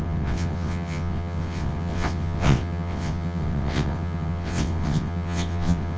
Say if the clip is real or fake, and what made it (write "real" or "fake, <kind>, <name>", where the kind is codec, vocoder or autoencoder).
fake, vocoder, WaveNeXt